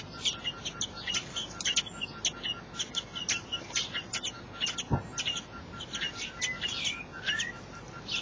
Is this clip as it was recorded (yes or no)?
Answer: yes